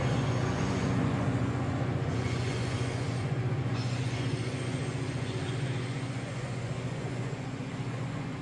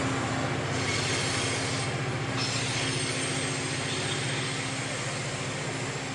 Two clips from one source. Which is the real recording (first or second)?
second